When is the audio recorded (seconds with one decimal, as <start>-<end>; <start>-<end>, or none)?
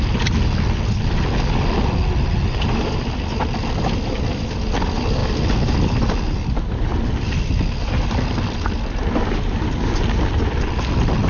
0.0-11.3